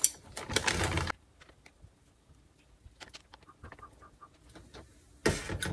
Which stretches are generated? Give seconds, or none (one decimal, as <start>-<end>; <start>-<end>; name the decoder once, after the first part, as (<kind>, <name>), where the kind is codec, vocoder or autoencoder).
none